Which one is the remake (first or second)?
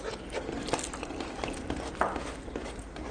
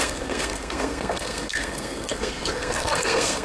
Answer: second